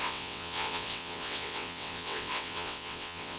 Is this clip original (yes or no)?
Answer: no